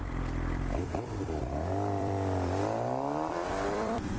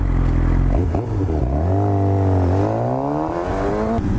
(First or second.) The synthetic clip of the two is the first